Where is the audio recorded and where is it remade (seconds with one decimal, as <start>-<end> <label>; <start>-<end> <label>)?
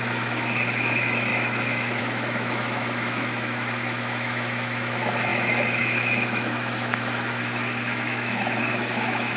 0.0-9.4 remade